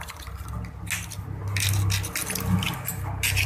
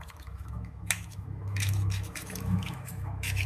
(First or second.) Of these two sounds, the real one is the first